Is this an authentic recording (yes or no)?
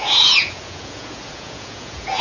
no